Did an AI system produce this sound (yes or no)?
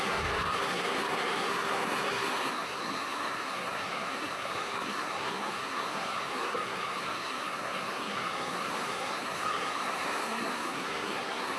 yes